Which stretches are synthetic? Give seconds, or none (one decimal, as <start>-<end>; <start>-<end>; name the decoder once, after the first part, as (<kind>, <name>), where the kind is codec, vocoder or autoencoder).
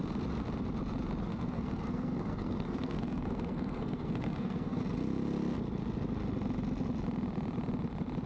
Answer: 1.3-4.8 (codec, SNAC)